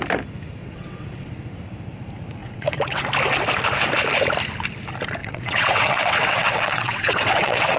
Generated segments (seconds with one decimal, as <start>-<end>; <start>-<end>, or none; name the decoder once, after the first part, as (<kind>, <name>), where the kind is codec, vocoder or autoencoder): 0.6-1.3 (vocoder, WaveNeXt); 2.4-3.0; 5.2-7.8